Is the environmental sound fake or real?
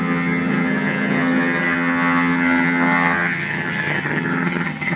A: fake